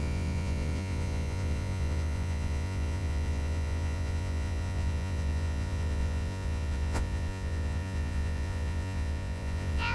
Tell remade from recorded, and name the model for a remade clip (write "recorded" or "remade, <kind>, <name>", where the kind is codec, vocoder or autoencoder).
remade, vocoder, Vocos